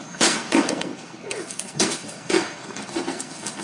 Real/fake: fake